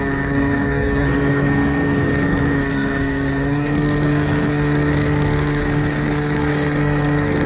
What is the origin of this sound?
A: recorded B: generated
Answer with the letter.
B